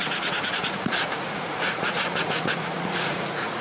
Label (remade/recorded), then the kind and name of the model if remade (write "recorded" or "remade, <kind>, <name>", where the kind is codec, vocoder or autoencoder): remade, vocoder, Vocos